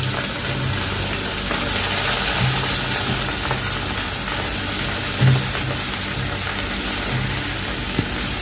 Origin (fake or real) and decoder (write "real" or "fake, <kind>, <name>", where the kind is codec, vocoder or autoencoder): real